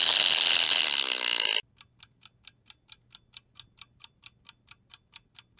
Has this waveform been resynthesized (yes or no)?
no